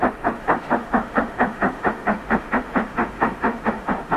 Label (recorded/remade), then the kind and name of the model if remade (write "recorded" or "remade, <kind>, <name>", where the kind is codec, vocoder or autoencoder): remade, autoencoder, DAC-VAE